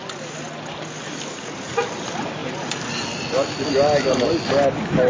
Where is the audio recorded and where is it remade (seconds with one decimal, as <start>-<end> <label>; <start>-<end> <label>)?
0.0-5.1 recorded